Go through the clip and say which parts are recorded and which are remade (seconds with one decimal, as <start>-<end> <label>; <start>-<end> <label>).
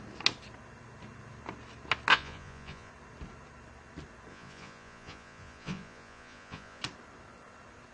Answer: 0.0-2.1 recorded; 2.1-2.9 remade; 2.9-4.3 recorded; 4.3-6.8 remade; 6.8-7.9 recorded